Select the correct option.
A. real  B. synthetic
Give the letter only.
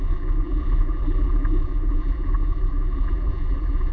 B